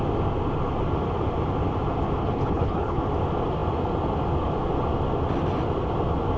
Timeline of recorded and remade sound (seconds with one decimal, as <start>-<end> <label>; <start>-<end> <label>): 0.0-2.2 recorded; 2.2-3.0 remade; 3.0-6.4 recorded